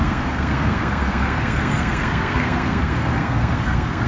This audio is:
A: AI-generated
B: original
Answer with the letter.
A